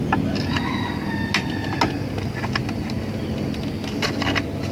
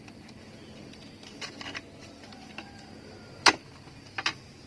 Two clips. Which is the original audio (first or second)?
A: first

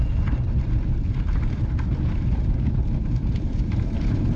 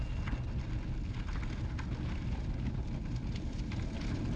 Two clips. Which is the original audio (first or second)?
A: second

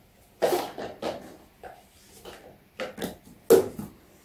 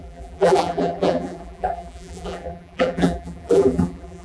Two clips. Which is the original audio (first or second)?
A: first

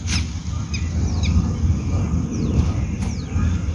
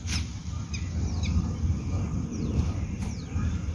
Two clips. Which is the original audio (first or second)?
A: first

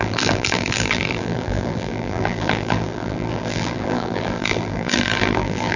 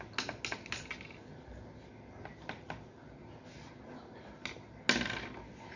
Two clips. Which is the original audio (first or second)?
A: second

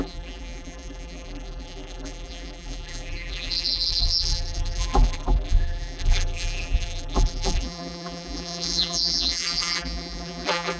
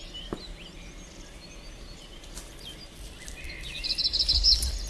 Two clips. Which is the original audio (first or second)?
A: second